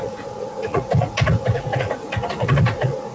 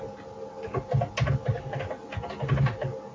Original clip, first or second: second